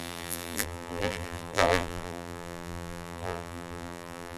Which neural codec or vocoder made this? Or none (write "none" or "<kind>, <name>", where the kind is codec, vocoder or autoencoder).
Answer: vocoder, BigVGAN v2